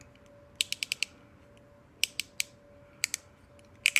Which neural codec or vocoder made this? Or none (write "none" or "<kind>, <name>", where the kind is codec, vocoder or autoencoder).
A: none